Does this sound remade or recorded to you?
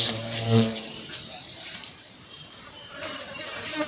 remade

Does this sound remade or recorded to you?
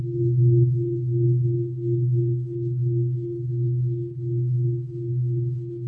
remade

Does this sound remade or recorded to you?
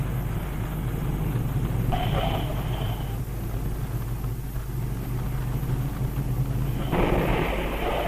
recorded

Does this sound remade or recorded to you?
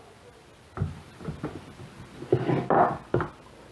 recorded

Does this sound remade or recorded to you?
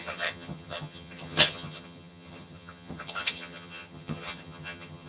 remade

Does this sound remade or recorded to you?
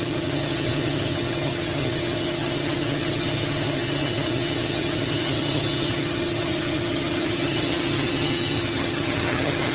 remade